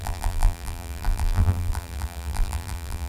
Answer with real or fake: fake